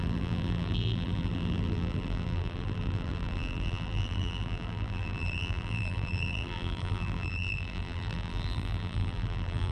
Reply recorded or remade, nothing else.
remade